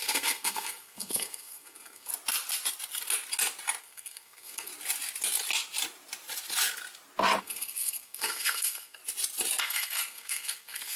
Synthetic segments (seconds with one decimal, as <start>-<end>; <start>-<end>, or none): 0.0-2.1; 3.8-4.7; 7.4-9.0; 9.6-11.0

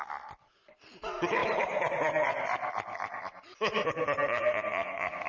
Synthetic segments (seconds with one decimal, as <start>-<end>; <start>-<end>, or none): none

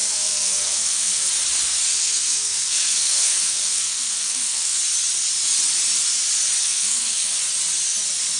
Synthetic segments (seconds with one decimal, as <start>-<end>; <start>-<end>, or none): 0.0-1.3; 1.9-4.8; 6.6-7.3

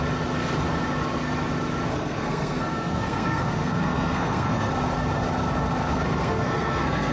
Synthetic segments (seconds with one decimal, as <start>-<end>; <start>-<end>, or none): 1.9-4.7; 5.9-7.1

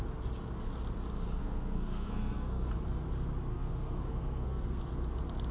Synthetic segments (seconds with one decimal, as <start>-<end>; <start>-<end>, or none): 1.4-2.7; 3.5-4.8

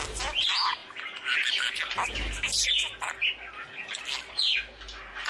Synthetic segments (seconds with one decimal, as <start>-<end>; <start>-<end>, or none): none

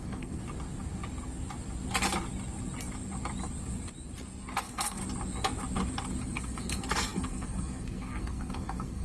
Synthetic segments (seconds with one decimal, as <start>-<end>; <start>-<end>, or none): 0.0-0.4; 4.6-5.0; 6.2-9.0